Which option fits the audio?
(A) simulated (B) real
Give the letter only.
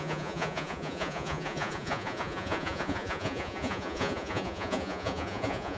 A